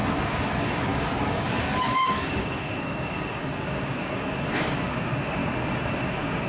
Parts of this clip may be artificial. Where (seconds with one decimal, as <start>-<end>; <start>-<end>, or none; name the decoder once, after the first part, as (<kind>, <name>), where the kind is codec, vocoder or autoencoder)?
0.5-5.4 (codec, DAC); 5.9-6.5